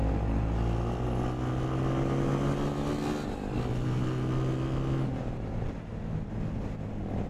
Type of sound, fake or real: real